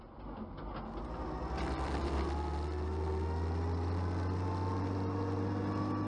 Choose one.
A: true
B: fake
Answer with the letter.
A